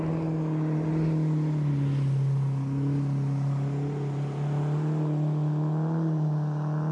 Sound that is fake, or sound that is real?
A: real